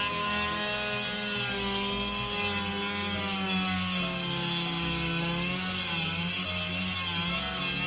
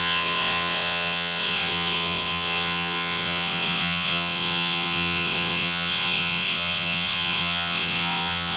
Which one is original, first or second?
first